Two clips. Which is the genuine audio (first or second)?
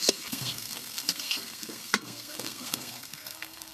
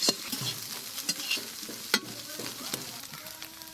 second